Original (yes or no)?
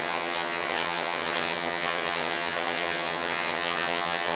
no